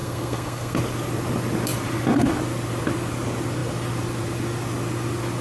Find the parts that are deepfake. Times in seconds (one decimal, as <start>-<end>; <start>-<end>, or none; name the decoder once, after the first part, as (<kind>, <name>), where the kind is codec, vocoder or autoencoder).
0.0-0.8 (codec, SNAC)